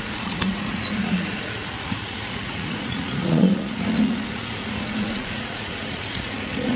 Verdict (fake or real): fake